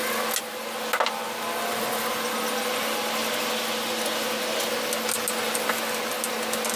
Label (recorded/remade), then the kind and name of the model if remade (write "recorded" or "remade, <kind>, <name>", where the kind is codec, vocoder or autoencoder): recorded